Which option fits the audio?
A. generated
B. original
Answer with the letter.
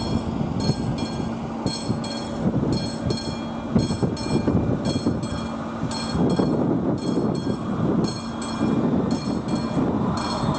B